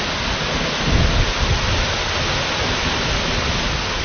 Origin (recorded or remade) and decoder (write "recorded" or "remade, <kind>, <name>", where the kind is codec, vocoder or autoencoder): recorded